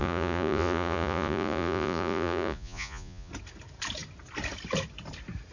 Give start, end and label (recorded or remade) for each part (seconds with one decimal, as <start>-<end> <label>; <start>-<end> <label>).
0.0-3.3 remade; 3.3-5.5 recorded